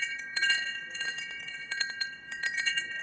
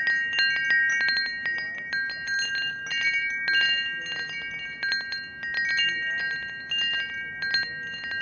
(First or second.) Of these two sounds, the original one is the second